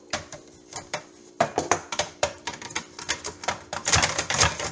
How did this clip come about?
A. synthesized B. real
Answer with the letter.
A